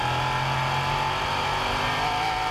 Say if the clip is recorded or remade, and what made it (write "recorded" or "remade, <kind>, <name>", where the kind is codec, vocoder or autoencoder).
recorded